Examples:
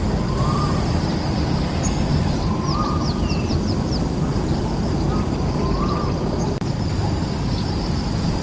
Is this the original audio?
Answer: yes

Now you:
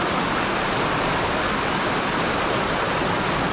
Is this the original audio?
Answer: yes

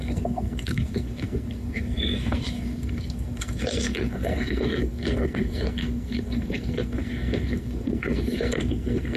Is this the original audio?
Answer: no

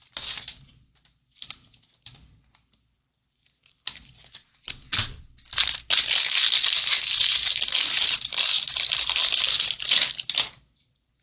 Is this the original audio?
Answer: yes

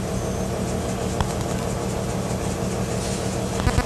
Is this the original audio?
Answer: yes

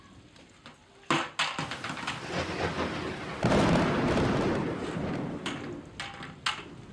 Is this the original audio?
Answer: yes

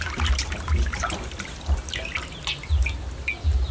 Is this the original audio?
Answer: yes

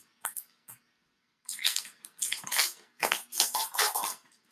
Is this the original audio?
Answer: no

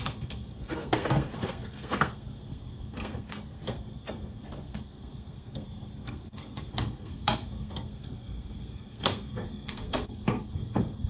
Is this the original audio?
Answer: no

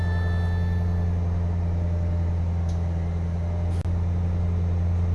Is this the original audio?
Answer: yes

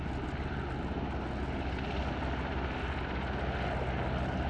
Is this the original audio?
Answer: yes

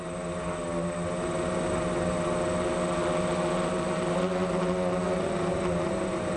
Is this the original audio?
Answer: yes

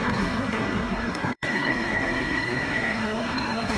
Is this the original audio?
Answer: no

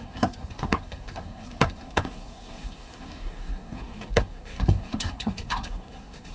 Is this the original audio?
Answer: no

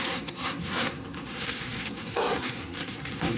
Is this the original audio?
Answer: no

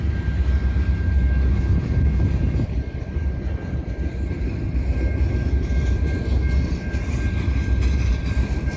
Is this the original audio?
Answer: yes